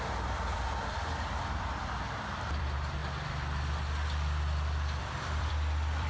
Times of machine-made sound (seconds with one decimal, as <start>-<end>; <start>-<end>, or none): 0.0-3.0; 5.0-6.1